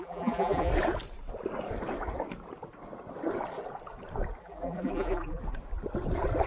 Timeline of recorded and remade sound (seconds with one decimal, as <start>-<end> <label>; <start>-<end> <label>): 0.0-0.7 remade; 0.7-4.4 recorded; 4.4-5.4 remade; 5.4-6.5 recorded